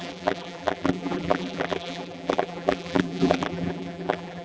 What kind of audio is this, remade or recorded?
remade